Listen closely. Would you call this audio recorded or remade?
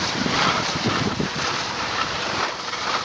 remade